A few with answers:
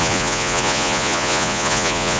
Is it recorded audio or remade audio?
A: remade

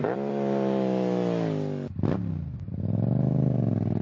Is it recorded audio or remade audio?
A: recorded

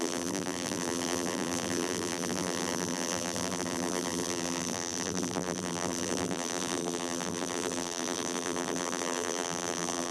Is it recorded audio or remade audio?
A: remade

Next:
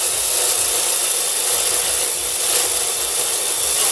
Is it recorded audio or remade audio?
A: recorded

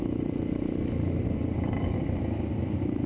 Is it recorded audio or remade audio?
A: recorded